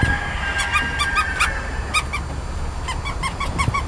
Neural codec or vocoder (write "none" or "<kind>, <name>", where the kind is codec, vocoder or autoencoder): none